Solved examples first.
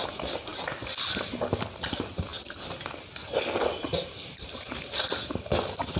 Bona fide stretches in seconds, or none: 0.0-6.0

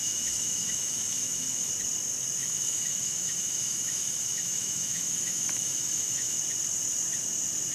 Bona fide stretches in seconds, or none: 1.7-2.4; 6.4-7.7